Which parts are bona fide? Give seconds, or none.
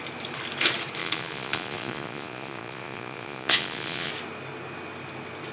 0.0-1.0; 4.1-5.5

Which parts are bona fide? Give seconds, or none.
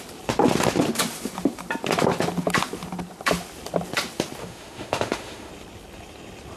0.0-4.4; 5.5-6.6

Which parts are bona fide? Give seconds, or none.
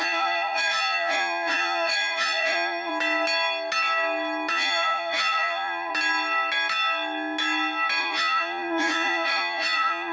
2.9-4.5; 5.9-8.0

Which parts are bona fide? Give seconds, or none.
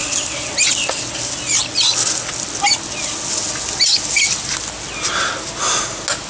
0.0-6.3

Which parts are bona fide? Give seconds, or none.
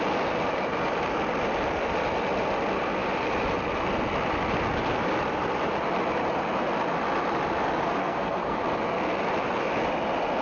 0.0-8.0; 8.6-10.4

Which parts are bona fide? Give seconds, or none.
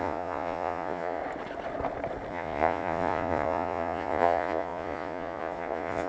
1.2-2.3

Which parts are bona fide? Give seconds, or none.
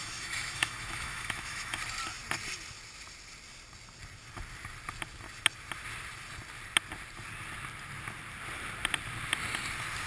1.8-10.1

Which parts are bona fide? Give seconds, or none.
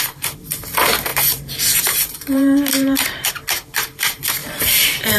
0.0-1.1; 3.3-4.4